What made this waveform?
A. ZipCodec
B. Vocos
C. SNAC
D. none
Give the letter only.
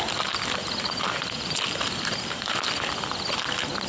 D